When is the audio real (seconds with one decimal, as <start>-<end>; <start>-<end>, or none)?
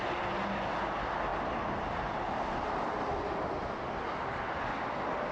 0.0-5.3